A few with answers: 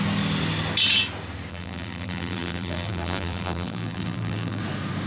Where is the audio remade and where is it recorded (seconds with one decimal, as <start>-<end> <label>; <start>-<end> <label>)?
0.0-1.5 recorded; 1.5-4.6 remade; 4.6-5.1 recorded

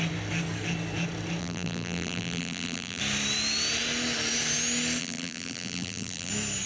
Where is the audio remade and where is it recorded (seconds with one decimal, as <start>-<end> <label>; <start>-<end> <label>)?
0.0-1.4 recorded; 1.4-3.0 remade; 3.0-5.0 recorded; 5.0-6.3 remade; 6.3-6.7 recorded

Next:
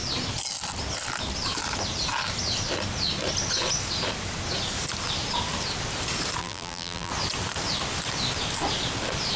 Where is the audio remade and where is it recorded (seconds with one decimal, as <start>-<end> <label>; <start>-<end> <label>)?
0.0-6.4 recorded; 6.4-7.1 remade; 7.1-9.4 recorded

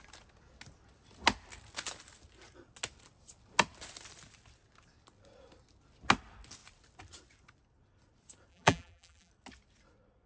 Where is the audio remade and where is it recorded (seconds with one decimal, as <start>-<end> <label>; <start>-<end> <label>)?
0.0-8.5 recorded; 8.5-9.3 remade; 9.3-10.3 recorded